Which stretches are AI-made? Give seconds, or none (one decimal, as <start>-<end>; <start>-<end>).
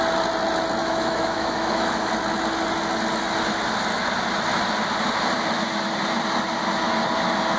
0.8-2.1